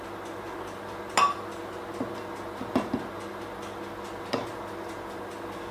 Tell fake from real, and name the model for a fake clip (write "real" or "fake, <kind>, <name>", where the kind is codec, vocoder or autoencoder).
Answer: real